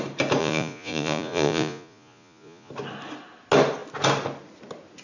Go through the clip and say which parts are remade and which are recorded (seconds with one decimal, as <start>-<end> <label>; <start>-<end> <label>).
0.0-0.4 recorded; 0.4-2.7 remade; 2.7-5.0 recorded